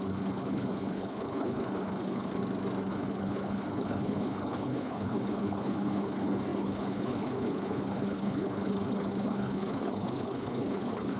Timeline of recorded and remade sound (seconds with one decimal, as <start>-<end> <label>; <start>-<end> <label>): 0.0-2.4 remade; 2.4-2.9 recorded; 2.9-11.2 remade